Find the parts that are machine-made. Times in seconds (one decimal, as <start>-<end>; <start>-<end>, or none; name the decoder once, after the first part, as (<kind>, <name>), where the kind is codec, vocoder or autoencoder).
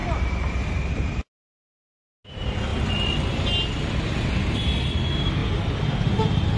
none